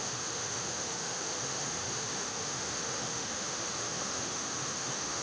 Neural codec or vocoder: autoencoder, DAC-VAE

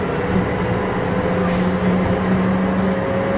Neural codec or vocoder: none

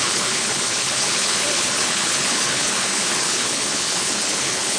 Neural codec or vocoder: codec, HILCodec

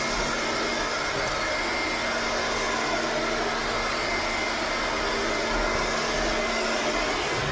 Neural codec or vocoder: none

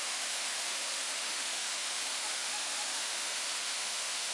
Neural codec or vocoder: autoencoder, DAC-VAE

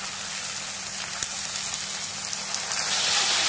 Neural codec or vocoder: none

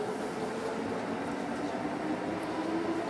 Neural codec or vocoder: none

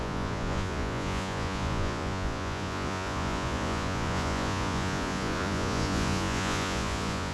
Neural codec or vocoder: vocoder, Vocos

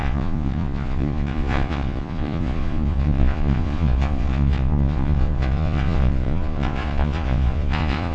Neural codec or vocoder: vocoder, Vocos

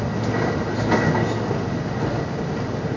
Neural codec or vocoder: none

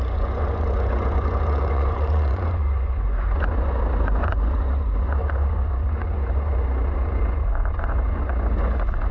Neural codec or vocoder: vocoder, Vocos